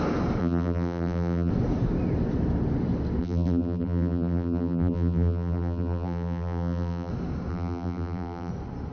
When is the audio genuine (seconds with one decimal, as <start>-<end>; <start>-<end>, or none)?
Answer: 0.0-0.4; 1.5-3.2; 7.1-7.5; 8.5-8.9